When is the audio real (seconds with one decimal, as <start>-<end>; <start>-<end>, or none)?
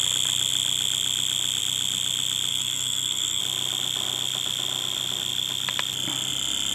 0.0-2.5; 3.4-6.7